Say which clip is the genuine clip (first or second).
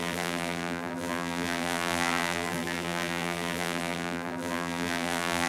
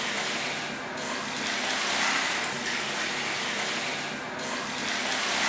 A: second